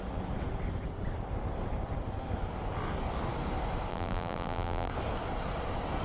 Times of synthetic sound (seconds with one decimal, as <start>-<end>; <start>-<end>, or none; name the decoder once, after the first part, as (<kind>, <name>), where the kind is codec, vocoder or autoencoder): 3.9-4.9 (vocoder, BigVGAN v2)